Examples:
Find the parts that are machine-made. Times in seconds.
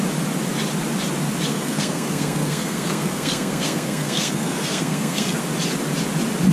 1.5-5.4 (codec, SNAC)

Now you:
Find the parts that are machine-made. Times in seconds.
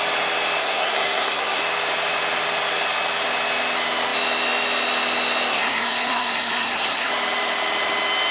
0.6-1.6 (codec, SNAC); 5.5-7.1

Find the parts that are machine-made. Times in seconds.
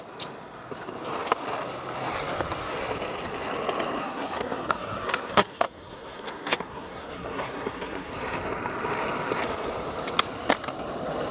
4.0-8.1 (codec, SNAC)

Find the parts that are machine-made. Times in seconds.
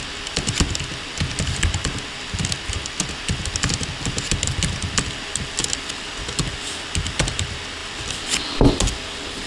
none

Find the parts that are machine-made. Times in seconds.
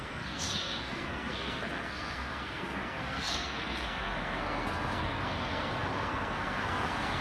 0.0-7.2 (codec, SNAC)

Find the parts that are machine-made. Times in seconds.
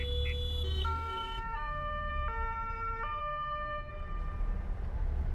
0.8-2.1 (codec, SNAC); 3.2-3.9